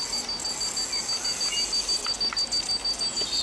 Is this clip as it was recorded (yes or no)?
yes